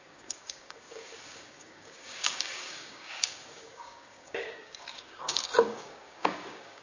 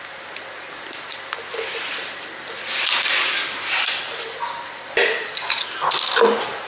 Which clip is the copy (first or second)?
first